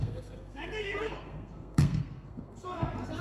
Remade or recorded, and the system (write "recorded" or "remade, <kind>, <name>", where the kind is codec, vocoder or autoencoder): remade, codec, SNAC